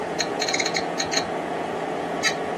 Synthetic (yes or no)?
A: yes